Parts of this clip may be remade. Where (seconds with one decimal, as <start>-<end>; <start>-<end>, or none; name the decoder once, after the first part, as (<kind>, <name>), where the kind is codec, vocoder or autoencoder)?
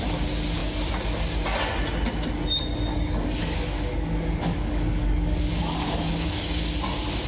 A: 2.9-6.6 (codec, DAC)